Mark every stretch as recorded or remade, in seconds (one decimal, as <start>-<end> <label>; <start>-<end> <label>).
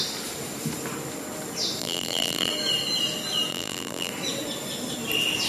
0.0-1.8 recorded; 1.8-2.5 remade; 2.5-3.5 recorded; 3.5-4.1 remade; 4.1-5.5 recorded